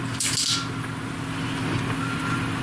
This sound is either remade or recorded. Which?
recorded